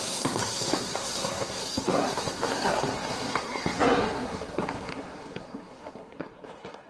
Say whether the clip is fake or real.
fake